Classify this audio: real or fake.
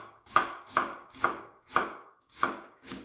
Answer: fake